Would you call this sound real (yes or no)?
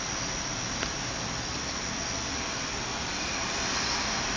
yes